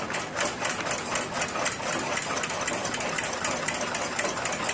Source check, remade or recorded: recorded